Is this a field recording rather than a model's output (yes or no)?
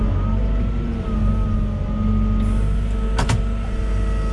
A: yes